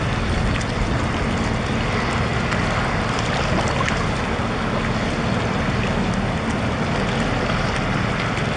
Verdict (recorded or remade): recorded